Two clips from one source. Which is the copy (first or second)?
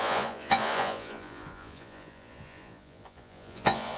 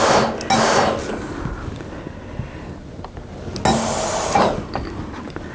first